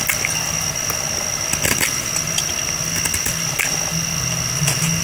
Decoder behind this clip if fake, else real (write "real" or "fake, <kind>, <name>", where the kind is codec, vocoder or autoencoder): real